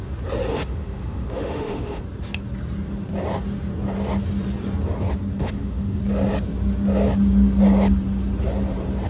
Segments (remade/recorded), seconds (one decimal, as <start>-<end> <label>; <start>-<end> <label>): 0.0-0.5 recorded; 0.5-2.0 remade; 2.0-5.4 recorded; 5.4-6.0 remade; 6.0-9.1 recorded